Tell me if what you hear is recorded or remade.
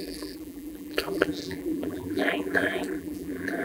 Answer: remade